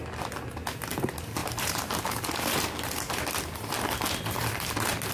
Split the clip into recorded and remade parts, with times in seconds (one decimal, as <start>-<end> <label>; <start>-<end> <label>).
0.0-1.4 recorded; 1.4-1.9 remade; 1.9-5.1 recorded